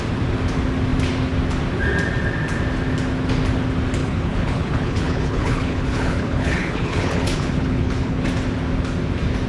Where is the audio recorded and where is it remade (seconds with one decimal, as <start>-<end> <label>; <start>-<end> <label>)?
0.0-4.0 recorded; 4.0-8.2 remade; 8.2-9.5 recorded